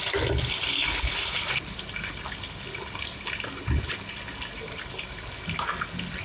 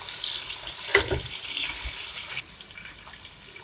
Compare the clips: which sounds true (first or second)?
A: first